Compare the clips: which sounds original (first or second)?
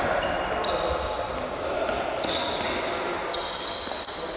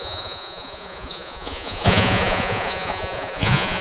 first